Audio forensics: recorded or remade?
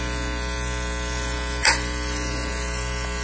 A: recorded